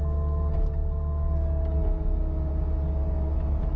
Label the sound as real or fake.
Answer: real